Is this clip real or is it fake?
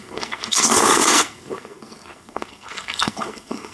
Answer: fake